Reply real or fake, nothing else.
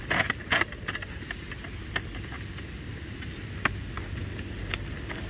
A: real